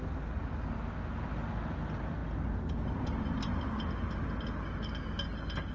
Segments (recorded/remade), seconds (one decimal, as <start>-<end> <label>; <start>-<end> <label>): 0.0-5.7 recorded